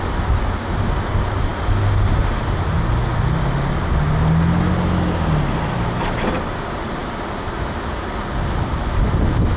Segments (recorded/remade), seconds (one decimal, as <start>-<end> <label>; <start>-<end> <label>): 0.0-9.6 recorded